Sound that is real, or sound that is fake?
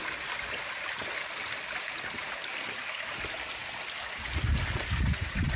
real